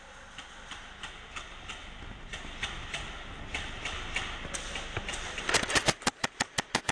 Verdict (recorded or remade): recorded